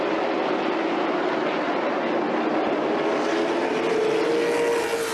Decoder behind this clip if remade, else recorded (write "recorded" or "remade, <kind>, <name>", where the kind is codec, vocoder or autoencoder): recorded